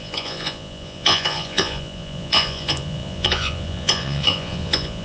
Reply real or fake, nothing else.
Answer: fake